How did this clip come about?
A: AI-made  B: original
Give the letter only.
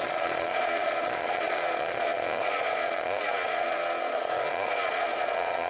A